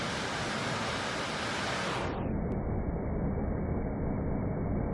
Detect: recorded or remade recorded